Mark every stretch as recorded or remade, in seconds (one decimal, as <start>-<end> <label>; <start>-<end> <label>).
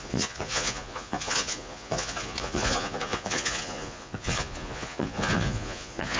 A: 0.0-6.2 remade